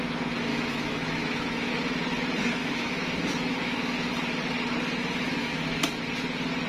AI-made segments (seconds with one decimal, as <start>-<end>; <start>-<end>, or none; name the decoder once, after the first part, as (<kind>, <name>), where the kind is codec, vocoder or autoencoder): 0.5-1.7 (autoencoder, DAC-VAE); 2.6-4.1; 5.0-5.8